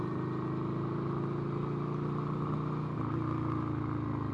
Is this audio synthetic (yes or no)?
no